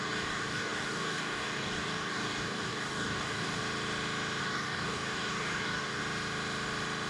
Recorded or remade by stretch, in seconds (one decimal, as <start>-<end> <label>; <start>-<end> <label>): 0.0-3.6 remade; 3.6-4.4 recorded; 4.4-6.0 remade; 6.0-7.1 recorded

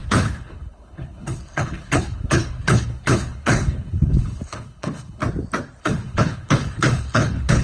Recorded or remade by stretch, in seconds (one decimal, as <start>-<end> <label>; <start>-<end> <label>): 0.0-5.2 remade; 5.2-5.8 recorded; 5.8-7.6 remade